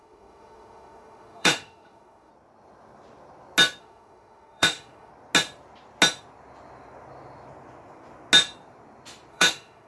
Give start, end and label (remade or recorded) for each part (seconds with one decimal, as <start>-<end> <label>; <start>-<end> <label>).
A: 0.0-2.3 remade; 2.3-3.8 recorded; 3.8-5.1 remade; 5.1-9.3 recorded; 9.3-9.9 remade